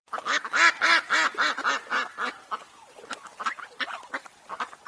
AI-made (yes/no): no